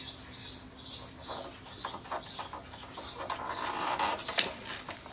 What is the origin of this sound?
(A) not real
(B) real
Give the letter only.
B